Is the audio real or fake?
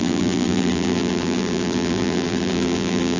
fake